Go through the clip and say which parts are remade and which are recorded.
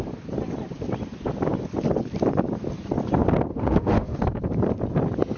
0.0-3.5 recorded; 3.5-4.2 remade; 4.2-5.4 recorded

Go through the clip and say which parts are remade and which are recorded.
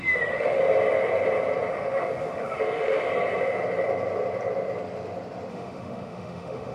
0.0-0.6 remade; 0.6-1.7 recorded; 1.7-3.1 remade; 3.1-5.5 recorded; 5.5-6.7 remade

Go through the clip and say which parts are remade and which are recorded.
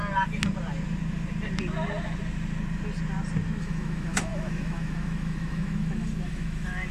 0.0-3.6 recorded; 3.6-6.9 remade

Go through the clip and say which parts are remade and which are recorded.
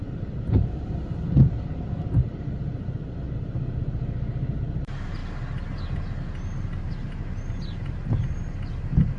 0.0-9.2 recorded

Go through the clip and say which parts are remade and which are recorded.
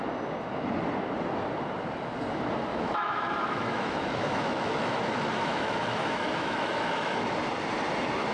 0.0-2.7 recorded; 2.7-7.2 remade; 7.2-8.3 recorded